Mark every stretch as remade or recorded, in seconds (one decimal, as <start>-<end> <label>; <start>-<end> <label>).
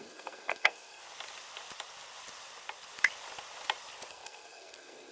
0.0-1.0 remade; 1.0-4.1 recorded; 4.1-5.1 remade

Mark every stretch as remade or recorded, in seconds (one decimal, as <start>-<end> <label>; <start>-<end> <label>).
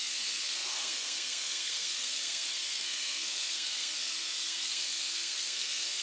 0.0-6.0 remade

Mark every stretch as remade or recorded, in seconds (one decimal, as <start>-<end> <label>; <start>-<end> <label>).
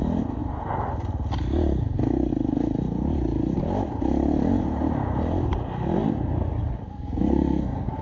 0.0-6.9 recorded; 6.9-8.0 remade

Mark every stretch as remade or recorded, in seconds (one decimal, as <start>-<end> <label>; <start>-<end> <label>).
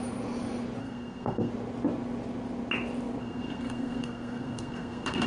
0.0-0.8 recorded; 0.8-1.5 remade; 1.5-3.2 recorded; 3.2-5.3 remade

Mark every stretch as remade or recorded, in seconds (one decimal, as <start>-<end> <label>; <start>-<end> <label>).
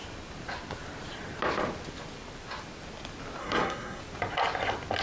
0.0-3.4 recorded; 3.4-4.0 remade; 4.0-5.0 recorded